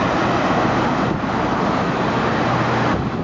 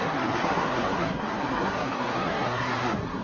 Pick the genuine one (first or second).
first